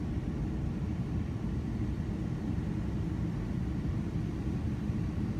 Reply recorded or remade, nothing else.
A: recorded